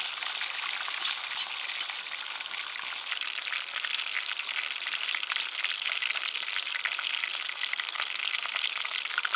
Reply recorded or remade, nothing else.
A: recorded